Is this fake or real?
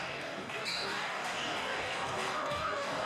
fake